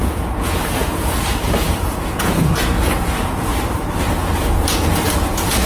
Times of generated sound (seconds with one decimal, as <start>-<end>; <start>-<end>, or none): 0.0-3.5; 4.5-5.7